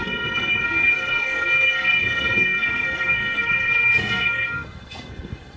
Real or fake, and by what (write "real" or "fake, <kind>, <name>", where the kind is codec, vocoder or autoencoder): fake, codec, SNAC